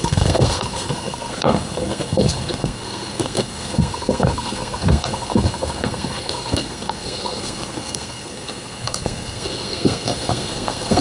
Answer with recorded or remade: remade